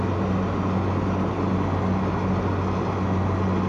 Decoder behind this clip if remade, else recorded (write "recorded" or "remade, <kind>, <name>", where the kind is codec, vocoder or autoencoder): recorded